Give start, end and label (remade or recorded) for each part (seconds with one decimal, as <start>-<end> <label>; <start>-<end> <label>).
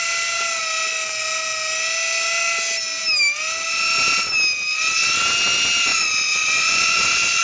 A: 0.0-5.9 recorded; 5.9-7.4 remade